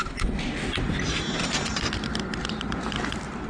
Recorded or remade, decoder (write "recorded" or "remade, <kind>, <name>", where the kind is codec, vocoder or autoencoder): recorded